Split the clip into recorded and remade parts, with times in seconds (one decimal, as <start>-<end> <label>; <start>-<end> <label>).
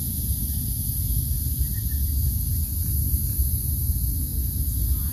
0.0-2.5 recorded; 2.5-3.9 remade; 3.9-5.1 recorded